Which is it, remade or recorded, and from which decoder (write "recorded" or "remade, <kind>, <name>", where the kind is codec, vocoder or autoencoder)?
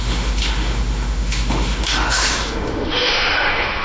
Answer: remade, autoencoder, DAC-VAE